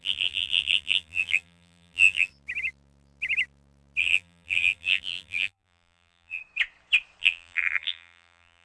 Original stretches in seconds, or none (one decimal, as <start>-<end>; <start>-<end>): 2.3-4.0; 6.4-7.2

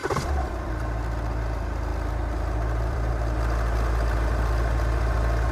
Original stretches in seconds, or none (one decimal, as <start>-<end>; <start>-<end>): 0.7-1.9; 3.1-5.5